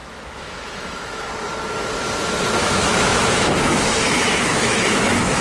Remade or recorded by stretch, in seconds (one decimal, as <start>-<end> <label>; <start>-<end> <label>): 0.0-1.3 remade; 1.3-2.6 recorded; 2.6-5.4 remade